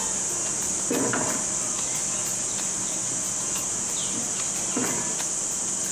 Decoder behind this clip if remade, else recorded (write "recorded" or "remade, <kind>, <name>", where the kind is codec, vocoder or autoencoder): recorded